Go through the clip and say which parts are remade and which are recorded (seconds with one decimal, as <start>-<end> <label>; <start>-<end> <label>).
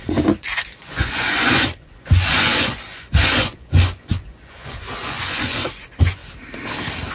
0.0-6.2 remade; 6.2-7.1 recorded